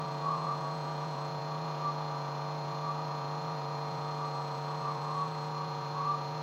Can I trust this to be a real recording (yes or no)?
no